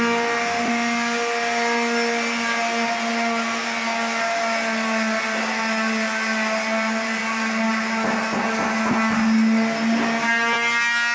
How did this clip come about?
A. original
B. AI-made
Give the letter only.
A